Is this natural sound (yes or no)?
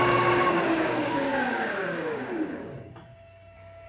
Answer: no